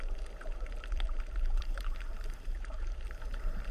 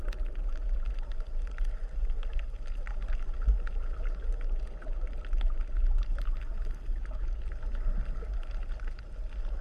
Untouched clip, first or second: second